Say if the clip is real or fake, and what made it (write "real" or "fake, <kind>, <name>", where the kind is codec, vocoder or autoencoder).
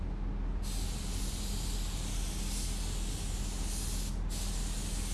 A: real